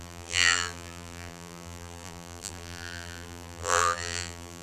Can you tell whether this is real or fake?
fake